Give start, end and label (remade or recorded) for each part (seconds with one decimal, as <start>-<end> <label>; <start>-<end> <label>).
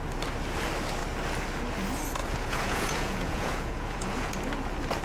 0.0-2.2 recorded; 2.2-4.3 remade; 4.3-5.0 recorded